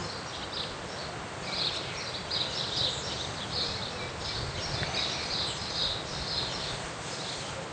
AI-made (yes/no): no